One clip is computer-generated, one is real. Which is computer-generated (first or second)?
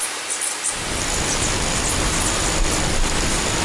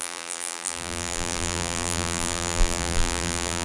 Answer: second